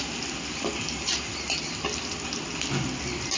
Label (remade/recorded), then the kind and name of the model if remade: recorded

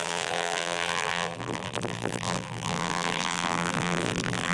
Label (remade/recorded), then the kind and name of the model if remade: remade, vocoder, BigVGAN v2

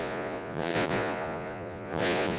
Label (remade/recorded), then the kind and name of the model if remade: remade, vocoder, Vocos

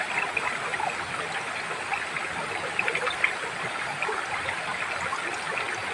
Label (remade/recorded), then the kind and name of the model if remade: recorded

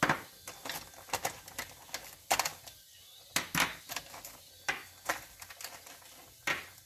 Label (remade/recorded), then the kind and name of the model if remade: recorded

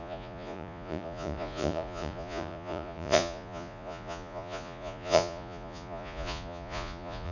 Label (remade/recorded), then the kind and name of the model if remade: remade, vocoder, Vocos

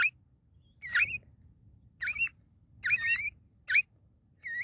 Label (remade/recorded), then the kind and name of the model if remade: recorded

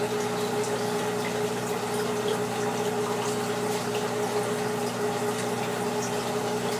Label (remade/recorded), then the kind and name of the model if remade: recorded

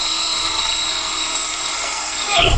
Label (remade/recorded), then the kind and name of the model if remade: remade, codec, SNAC